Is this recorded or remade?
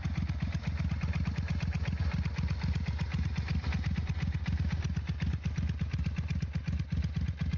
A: recorded